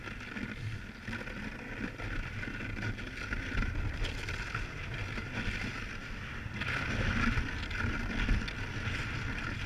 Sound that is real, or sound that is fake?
real